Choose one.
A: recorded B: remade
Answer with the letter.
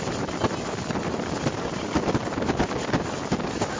A